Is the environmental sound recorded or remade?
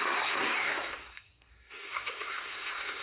remade